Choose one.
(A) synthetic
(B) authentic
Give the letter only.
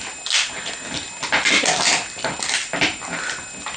B